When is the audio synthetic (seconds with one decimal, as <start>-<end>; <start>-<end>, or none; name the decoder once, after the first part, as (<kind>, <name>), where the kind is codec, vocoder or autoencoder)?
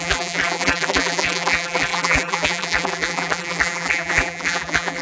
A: 0.0-5.0 (vocoder, BigVGAN v2)